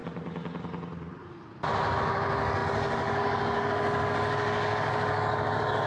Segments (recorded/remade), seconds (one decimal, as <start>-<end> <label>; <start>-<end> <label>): 0.0-1.9 recorded; 1.9-5.9 remade